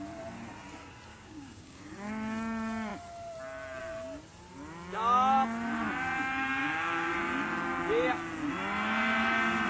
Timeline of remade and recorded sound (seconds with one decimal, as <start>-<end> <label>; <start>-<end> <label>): 0.0-1.1 recorded; 1.1-2.1 remade; 2.1-6.6 recorded; 6.6-7.1 remade; 7.1-9.7 recorded